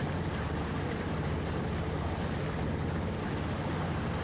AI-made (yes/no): no